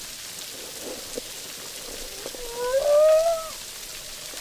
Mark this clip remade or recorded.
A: recorded